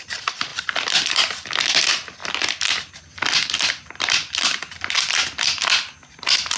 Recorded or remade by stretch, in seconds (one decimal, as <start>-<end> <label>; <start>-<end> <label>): 0.0-0.5 recorded; 0.5-1.6 remade; 1.6-6.6 recorded